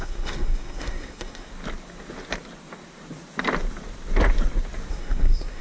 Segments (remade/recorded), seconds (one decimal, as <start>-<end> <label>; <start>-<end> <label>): 0.0-1.5 remade; 1.5-4.9 recorded; 4.9-5.6 remade